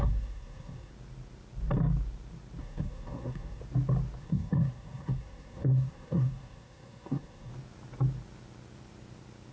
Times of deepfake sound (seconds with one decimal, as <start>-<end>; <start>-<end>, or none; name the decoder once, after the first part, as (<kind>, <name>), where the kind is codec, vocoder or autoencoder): 0.0-0.9 (codec, SNAC); 2.6-3.6; 4.2-7.5